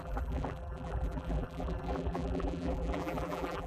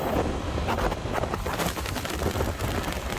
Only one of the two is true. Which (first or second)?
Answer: second